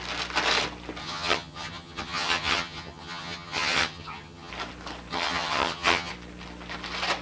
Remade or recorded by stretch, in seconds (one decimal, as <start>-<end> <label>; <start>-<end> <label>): 0.0-1.0 recorded; 1.0-4.5 remade; 4.5-5.1 recorded; 5.1-6.1 remade; 6.1-7.2 recorded